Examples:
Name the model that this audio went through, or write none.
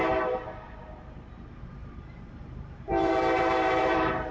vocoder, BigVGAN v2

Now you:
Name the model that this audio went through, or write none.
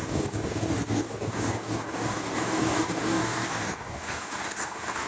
codec, DAC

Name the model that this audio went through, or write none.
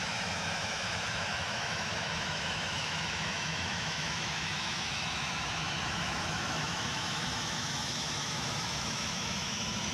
autoencoder, DAC-VAE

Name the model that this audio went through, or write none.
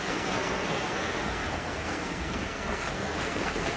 codec, SNAC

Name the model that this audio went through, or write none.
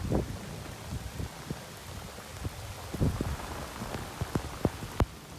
none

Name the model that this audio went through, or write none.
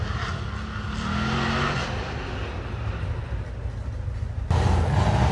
none